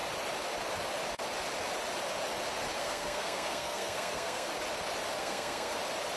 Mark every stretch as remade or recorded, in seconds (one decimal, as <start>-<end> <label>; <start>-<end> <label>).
0.0-2.8 recorded; 2.8-4.5 remade; 4.5-5.2 recorded; 5.2-5.8 remade; 5.8-6.2 recorded